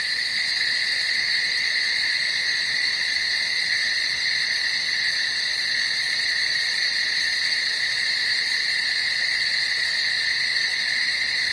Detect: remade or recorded remade